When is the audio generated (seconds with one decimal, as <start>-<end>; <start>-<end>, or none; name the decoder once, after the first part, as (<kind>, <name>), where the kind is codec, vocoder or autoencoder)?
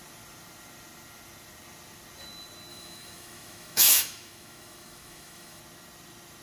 2.7-5.6 (autoencoder, DAC-VAE)